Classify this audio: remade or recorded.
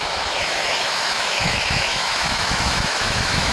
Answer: remade